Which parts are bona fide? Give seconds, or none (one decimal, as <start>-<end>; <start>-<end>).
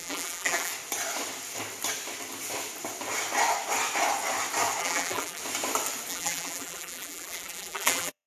0.7-4.8; 5.4-6.1